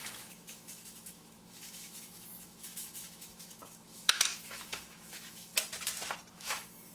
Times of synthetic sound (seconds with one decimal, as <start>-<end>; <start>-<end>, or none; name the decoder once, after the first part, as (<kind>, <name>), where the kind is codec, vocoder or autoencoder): 0.0-5.5 (autoencoder, DAC-VAE); 6.3-6.9